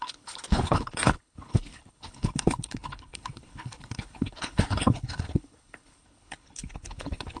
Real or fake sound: fake